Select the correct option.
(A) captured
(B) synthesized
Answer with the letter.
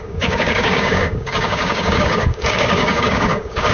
B